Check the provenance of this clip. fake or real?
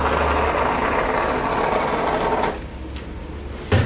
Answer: real